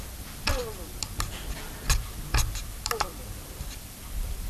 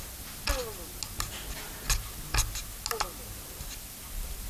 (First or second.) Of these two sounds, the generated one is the first